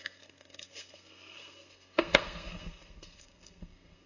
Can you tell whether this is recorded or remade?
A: remade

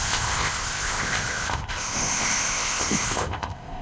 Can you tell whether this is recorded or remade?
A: remade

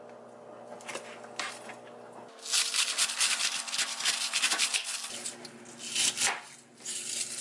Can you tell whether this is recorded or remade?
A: recorded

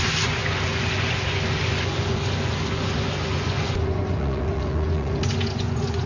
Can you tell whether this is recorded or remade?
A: remade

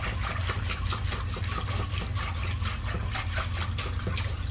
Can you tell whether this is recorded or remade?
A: recorded